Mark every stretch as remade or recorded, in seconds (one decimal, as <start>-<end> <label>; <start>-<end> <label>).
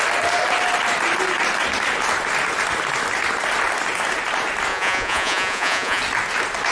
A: 0.0-4.7 recorded; 4.7-6.0 remade; 6.0-6.7 recorded